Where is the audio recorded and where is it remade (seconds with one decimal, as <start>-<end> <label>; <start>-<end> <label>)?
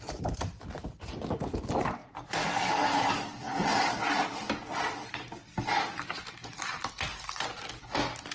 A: 0.0-8.3 recorded